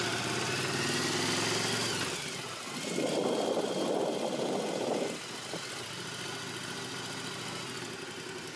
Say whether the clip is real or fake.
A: real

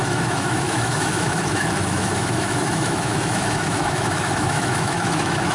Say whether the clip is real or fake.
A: fake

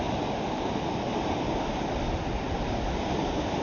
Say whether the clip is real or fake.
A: real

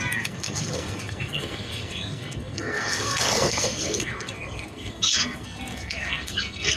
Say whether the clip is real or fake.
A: fake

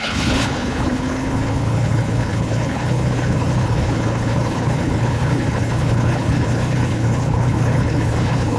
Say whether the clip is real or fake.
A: fake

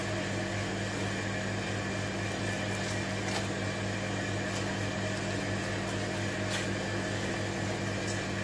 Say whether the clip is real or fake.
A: real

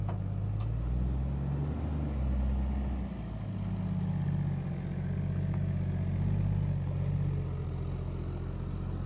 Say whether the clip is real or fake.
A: real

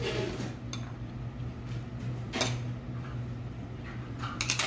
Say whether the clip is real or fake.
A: real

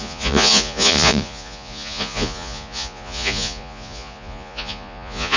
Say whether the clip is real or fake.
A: fake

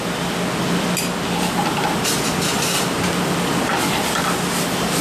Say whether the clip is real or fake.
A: real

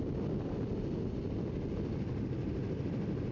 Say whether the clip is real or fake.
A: real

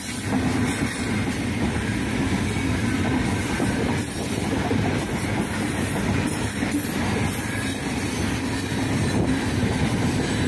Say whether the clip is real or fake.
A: real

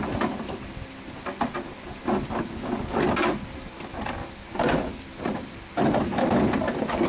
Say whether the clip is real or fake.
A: real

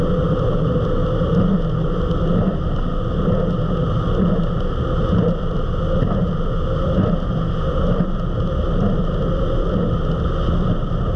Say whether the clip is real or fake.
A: real